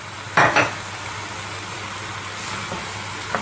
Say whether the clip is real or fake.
real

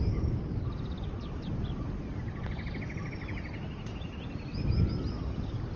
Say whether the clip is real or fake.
real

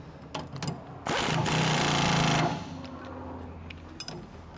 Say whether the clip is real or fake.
real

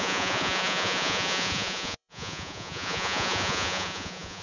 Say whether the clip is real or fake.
fake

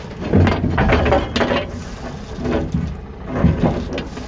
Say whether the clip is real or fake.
real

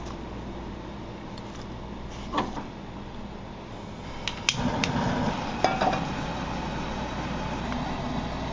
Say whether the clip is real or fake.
real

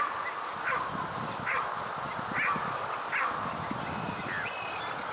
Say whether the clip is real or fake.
real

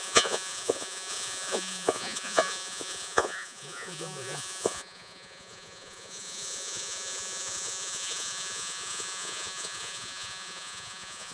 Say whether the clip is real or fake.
fake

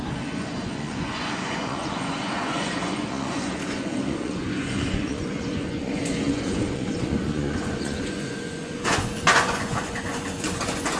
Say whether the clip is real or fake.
fake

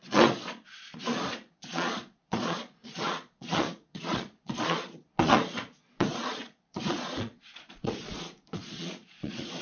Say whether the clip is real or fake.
fake